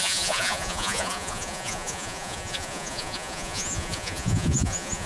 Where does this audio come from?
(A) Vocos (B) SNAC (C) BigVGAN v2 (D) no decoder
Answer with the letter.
A